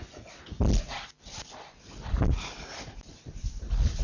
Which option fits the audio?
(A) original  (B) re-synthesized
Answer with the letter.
A